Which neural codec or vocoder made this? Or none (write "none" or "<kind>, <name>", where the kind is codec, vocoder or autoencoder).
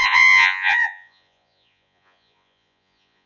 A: vocoder, Vocos